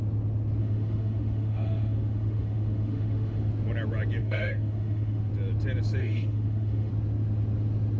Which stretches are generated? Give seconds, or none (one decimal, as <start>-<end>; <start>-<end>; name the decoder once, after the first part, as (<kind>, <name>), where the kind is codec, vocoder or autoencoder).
0.6-3.5 (autoencoder, DAC-VAE); 4.2-5.3; 6.0-6.9